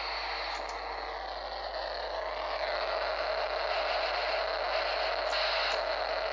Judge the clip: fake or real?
real